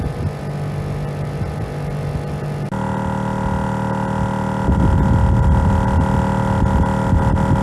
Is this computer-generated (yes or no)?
no